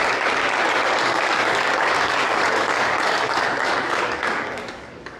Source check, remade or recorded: remade